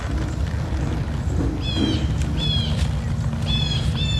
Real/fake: real